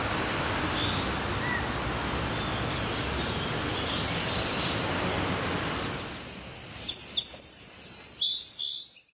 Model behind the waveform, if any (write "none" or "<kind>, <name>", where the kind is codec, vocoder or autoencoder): none